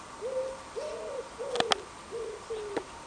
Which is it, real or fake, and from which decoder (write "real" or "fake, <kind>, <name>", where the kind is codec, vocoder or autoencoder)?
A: real